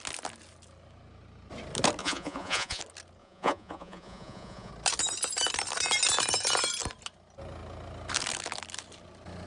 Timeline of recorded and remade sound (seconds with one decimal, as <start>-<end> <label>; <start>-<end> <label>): 0.0-2.0 recorded; 2.0-2.8 remade; 2.8-3.2 recorded; 3.2-4.7 remade; 4.7-9.5 recorded